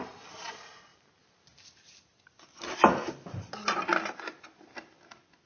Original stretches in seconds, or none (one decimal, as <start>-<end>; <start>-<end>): 0.0-5.5